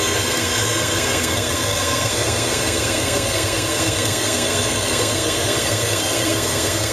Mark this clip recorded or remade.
remade